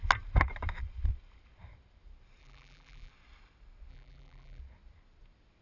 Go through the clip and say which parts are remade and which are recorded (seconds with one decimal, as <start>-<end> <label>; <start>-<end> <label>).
0.0-2.4 recorded; 2.4-3.1 remade; 3.1-3.9 recorded; 3.9-4.6 remade; 4.6-5.6 recorded